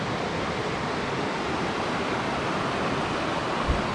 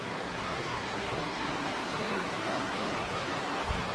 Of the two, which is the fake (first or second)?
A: second